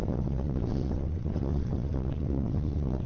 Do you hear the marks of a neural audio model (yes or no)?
yes